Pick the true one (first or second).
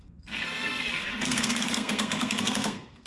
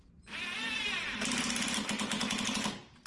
second